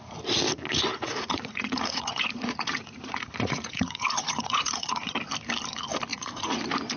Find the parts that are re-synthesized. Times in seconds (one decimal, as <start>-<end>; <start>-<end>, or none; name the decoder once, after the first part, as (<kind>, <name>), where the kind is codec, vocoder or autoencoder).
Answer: 0.9-5.1 (vocoder, Vocos); 6.1-6.6

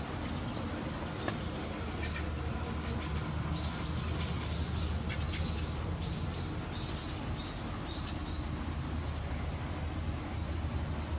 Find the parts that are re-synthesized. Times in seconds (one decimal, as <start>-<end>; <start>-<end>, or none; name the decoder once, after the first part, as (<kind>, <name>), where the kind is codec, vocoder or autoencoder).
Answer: 8.2-9.8 (vocoder, BigVGAN v2)